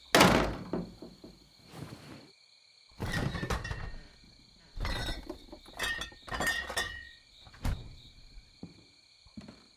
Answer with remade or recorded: recorded